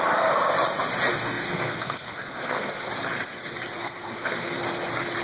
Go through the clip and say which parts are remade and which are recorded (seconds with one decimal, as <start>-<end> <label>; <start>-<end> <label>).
0.0-1.1 recorded; 1.1-2.9 remade; 2.9-3.8 recorded; 3.8-4.6 remade; 4.6-5.2 recorded

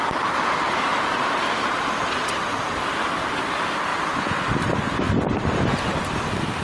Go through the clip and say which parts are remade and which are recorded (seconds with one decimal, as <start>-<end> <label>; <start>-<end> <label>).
0.0-0.5 recorded; 0.5-3.9 remade; 3.9-6.6 recorded